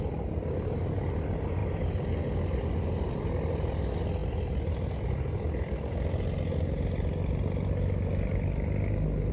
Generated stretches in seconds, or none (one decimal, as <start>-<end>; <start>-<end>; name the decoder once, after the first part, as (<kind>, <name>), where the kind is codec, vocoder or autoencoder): none